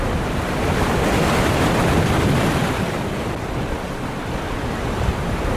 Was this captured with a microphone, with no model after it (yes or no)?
no